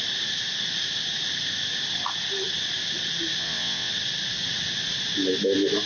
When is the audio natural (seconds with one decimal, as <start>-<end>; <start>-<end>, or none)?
0.0-3.4; 3.9-5.9